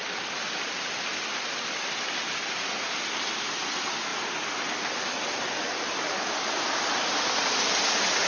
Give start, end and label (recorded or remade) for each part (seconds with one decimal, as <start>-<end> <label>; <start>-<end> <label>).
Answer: 0.0-8.3 recorded